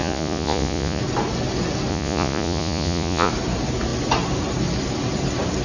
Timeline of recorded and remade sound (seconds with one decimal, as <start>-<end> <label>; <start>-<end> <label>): 0.0-1.0 remade; 1.0-1.9 recorded; 1.9-3.3 remade; 3.3-5.6 recorded